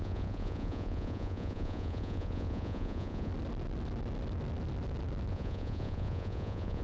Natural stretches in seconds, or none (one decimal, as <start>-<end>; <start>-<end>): 3.3-5.3